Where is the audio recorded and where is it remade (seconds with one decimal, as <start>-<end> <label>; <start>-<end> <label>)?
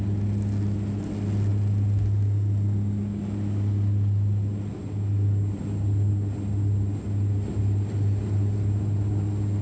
0.0-9.6 recorded